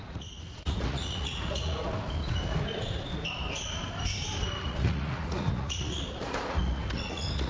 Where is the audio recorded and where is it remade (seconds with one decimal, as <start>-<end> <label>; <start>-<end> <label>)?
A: 0.0-1.9 remade; 1.9-4.6 recorded; 4.6-7.5 remade